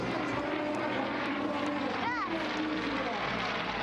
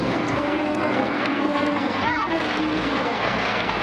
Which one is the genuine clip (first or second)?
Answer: first